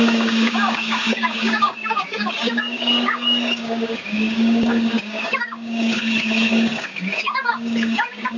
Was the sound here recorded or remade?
remade